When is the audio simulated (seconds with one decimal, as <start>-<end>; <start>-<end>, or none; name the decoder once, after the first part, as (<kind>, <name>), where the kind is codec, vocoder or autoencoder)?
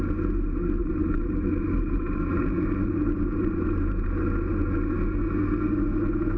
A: 0.8-4.1 (vocoder, BigVGAN v2)